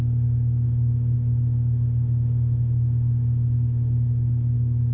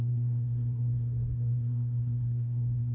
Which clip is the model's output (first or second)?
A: second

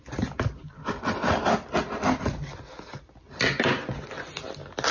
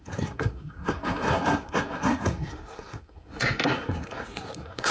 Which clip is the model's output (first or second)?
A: second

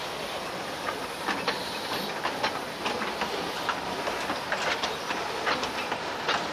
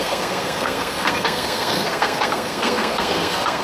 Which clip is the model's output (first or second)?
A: second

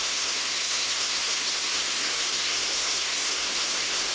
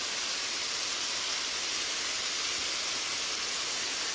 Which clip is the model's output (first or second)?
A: first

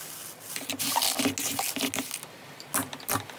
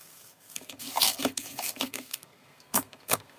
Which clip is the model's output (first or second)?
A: second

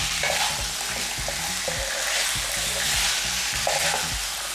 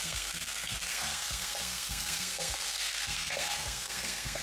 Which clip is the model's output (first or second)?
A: second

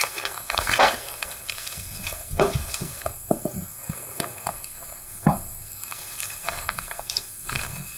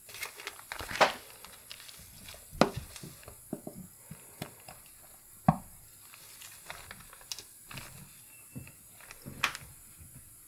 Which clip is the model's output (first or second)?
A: first